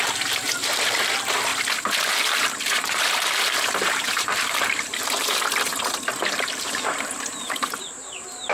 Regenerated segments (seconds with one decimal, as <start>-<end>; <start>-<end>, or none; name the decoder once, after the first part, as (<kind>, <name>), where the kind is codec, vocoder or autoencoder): 0.0-1.5 (vocoder, BigVGAN v2); 2.0-5.7; 6.2-8.5